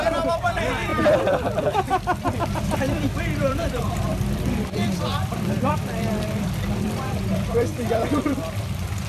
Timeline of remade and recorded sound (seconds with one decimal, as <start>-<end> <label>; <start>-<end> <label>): 0.0-9.1 remade